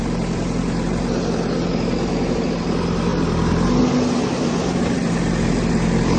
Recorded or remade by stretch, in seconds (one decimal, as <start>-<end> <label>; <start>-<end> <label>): 0.0-6.2 recorded